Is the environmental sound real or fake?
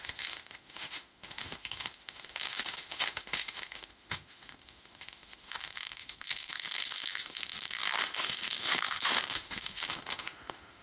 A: fake